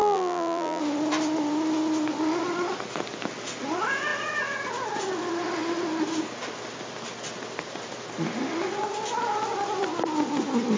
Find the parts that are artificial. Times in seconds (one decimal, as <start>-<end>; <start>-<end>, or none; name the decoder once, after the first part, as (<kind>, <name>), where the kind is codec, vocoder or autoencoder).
0.0-0.8 (vocoder, BigVGAN v2)